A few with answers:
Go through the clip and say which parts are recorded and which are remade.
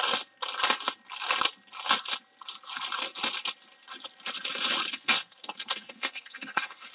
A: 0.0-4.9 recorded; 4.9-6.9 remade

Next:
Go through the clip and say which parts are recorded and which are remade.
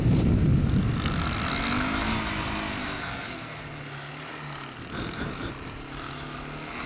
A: 0.0-2.8 recorded; 2.8-3.6 remade; 3.6-6.9 recorded